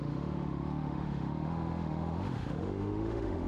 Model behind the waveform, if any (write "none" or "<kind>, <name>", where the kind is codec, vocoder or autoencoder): autoencoder, DAC-VAE